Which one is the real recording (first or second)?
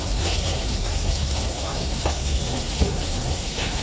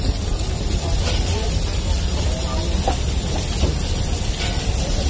second